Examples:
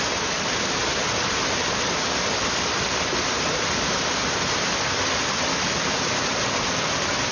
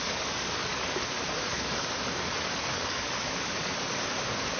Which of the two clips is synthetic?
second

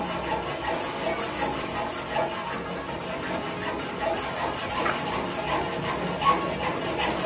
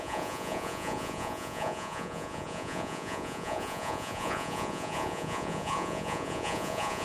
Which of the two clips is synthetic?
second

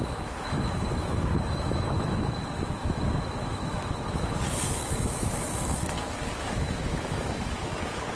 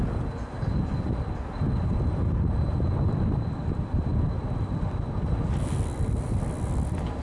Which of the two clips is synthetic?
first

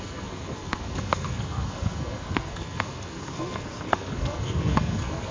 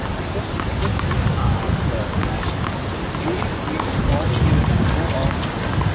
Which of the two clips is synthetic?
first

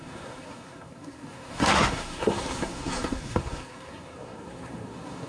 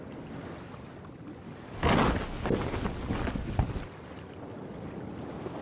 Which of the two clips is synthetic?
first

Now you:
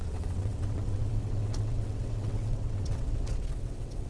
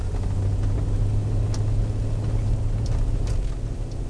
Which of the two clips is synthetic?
first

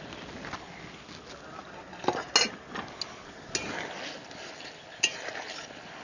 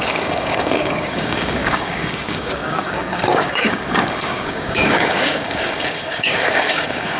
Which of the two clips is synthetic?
second